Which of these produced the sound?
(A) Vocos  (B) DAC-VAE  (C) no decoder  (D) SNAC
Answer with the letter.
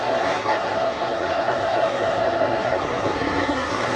D